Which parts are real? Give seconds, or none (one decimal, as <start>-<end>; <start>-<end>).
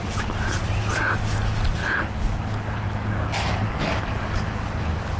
0.0-1.8